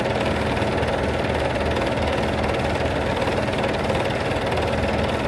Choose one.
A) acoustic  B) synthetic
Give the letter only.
A